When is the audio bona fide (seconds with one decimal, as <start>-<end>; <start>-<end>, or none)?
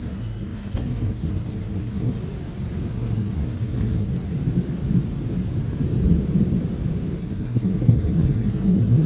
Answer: 2.2-2.9; 4.1-7.2